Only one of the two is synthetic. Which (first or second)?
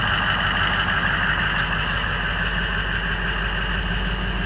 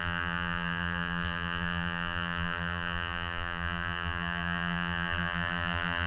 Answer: second